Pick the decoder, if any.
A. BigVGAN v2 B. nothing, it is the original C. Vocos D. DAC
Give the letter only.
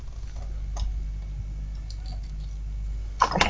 B